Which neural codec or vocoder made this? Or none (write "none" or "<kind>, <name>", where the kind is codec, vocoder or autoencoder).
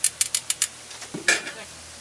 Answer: none